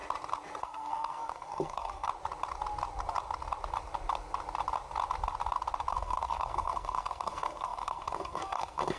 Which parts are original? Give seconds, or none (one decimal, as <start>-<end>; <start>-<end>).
0.0-0.6; 2.1-5.9